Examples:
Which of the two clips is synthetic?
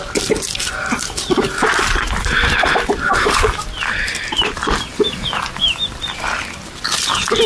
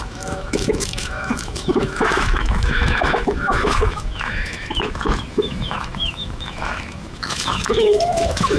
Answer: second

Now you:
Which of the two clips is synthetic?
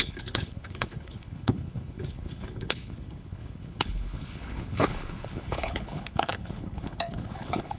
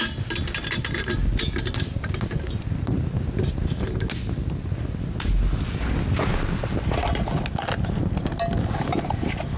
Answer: first